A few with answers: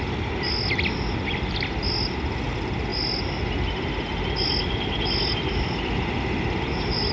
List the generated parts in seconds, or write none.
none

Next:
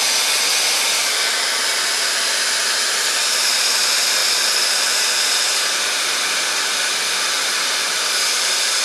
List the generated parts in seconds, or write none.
0.5-1.7; 4.2-8.8

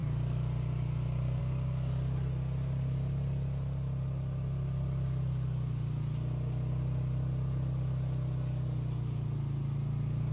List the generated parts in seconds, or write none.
none

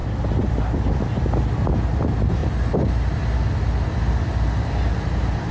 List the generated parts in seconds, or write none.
0.0-0.6

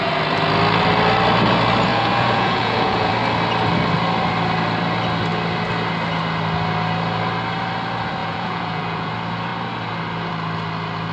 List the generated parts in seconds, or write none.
1.9-3.1; 8.2-9.1

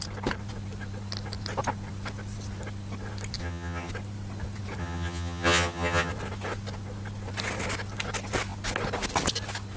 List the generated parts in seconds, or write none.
3.4-3.9; 4.8-6.1